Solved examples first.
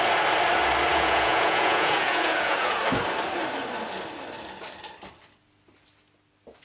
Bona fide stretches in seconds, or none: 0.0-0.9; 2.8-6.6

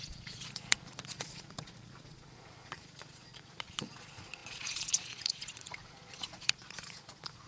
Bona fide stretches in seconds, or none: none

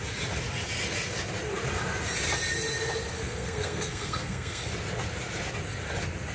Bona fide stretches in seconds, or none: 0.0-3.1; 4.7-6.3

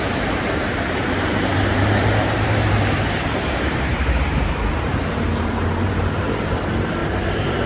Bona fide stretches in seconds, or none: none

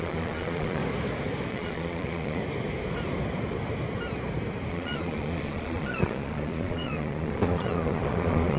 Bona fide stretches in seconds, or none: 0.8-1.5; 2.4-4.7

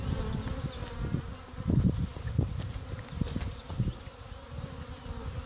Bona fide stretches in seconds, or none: 0.0-5.5